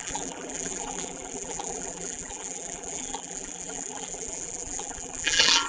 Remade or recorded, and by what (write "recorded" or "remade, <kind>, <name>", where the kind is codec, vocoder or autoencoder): remade, vocoder, BigVGAN v2